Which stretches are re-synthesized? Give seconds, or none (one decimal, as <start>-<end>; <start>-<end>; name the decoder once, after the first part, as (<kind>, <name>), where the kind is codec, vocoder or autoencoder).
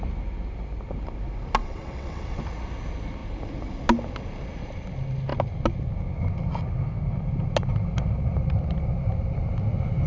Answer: 1.6-2.4 (vocoder, WaveNeXt)